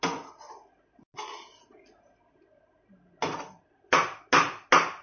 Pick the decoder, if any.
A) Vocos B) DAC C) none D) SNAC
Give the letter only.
C